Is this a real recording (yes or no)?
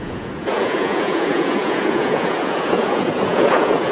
no